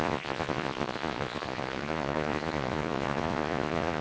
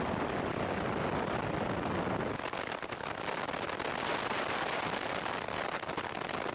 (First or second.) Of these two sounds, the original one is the second